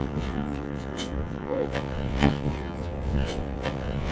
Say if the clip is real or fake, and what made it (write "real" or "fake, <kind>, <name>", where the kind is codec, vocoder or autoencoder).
fake, vocoder, WaveNeXt